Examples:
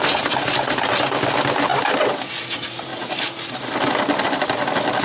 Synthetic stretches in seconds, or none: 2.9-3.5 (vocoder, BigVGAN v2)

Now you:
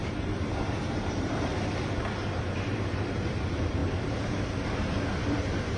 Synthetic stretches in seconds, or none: 0.0-1.5 (vocoder, BigVGAN v2); 2.4-5.8

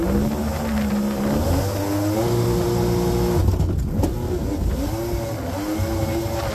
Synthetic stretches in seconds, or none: 0.4-1.6 (vocoder, BigVGAN v2)

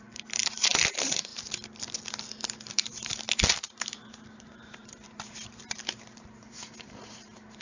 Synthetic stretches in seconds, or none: 0.0-1.3 (vocoder, BigVGAN v2); 2.7-7.6

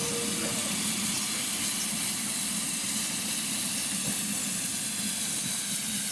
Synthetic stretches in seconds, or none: none

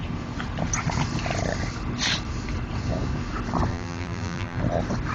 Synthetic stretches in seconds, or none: 3.7-4.6 (vocoder, BigVGAN v2)